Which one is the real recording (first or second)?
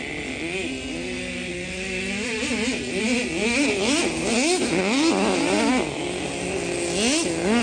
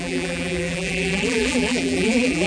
first